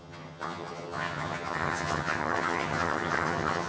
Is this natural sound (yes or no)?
no